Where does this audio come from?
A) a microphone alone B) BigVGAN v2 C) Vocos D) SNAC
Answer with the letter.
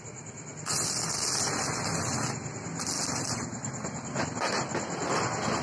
A